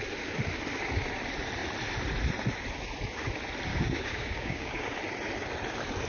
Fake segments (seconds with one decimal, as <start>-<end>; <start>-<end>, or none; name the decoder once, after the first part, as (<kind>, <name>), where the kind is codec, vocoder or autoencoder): 3.7-4.9 (codec, DAC)